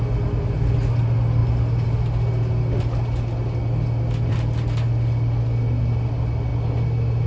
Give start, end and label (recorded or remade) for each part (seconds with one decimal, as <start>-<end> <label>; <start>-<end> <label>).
0.0-7.3 recorded